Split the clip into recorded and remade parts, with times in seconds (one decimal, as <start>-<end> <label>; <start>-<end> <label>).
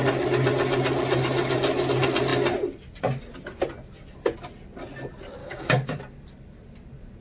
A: 0.0-5.4 recorded; 5.4-6.0 remade; 6.0-7.2 recorded